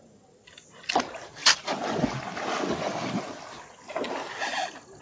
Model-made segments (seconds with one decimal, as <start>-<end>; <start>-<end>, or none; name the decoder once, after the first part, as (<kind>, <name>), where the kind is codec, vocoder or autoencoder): none